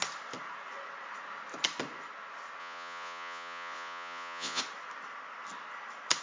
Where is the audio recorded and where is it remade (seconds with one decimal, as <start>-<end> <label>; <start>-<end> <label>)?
0.0-2.6 recorded; 2.6-4.6 remade; 4.6-6.2 recorded